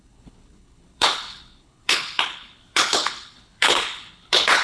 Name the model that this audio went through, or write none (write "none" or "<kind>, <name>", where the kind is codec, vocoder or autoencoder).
codec, HILCodec